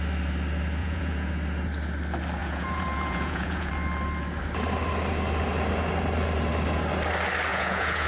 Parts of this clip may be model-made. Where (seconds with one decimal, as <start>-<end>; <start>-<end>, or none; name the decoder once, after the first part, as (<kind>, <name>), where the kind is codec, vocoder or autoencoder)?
0.8-1.3 (vocoder, Vocos); 2.4-3.7; 7.5-8.1